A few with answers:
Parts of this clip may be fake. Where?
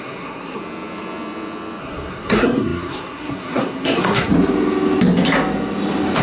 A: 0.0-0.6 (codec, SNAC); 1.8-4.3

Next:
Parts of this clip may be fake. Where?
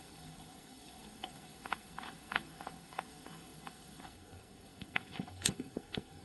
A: 0.0-6.2 (codec, SNAC)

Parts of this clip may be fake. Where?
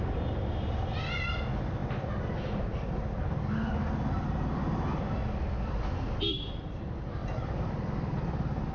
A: 7.2-7.7 (vocoder, BigVGAN v2)